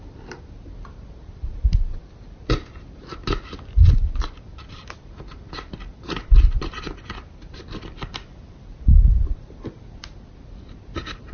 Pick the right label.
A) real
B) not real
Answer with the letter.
B